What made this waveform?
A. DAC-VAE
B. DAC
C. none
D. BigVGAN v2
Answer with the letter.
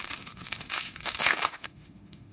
A